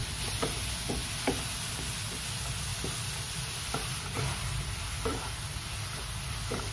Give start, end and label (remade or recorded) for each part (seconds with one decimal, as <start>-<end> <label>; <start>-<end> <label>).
0.0-2.7 recorded; 2.7-5.3 remade; 5.3-6.7 recorded